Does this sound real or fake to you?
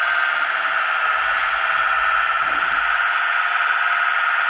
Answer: real